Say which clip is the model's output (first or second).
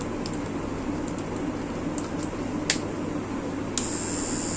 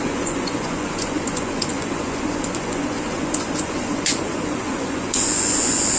second